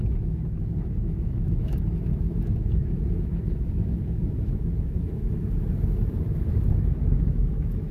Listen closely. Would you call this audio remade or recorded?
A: remade